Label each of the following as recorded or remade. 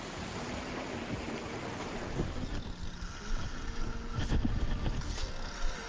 recorded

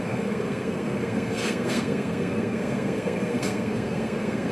remade